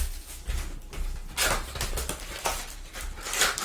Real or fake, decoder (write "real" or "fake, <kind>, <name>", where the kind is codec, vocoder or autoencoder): real